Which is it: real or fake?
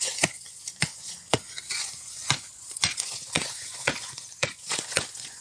fake